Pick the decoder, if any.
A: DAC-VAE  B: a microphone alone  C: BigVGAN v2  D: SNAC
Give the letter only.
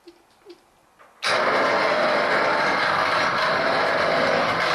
B